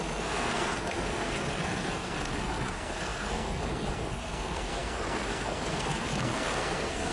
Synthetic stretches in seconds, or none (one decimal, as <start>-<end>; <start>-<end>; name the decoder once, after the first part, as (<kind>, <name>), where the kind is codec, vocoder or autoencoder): 0.0-7.1 (codec, SNAC)